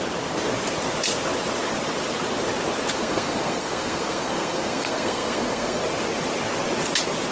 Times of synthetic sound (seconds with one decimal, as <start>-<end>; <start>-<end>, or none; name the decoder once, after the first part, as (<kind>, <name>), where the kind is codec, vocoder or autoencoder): 3.0-5.8 (codec, SNAC)